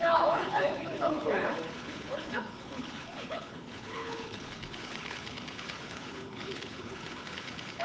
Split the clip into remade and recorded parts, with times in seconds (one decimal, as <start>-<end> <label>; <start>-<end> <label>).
0.0-7.8 remade